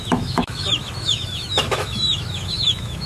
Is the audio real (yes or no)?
no